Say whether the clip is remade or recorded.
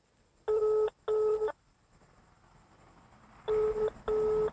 recorded